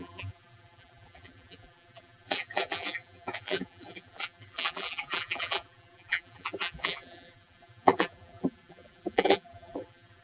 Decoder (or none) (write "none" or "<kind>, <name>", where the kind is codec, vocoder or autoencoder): vocoder, BigVGAN v2